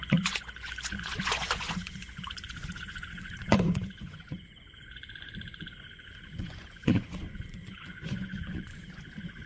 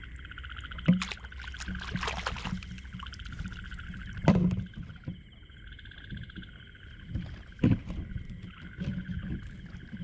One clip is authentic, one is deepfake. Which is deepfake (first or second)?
first